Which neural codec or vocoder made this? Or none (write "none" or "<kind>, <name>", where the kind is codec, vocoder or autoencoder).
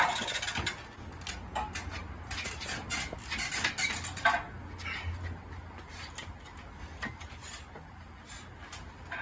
none